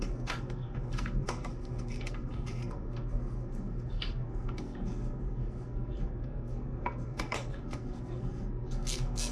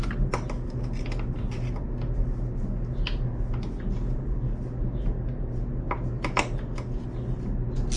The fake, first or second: first